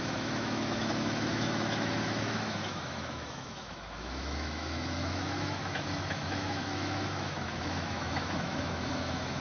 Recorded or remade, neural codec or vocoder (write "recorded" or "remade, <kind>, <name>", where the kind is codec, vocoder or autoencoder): remade, autoencoder, DAC-VAE